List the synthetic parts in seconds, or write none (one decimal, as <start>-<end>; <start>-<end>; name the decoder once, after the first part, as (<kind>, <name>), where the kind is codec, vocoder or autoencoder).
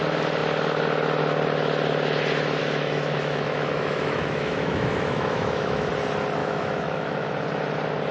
2.6-5.9 (autoencoder, DAC-VAE); 6.4-7.3